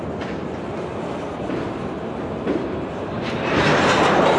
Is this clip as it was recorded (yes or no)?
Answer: yes